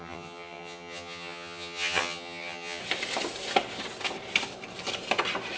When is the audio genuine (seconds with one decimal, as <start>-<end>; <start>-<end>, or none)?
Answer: 2.8-5.6